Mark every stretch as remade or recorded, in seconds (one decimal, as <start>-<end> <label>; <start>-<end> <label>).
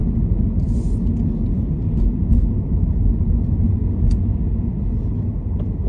0.0-5.9 recorded